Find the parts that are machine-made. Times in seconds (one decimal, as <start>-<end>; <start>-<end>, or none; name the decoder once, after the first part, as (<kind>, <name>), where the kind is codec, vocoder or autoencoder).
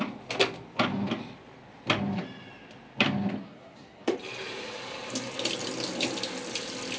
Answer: 3.4-4.1 (codec, SNAC)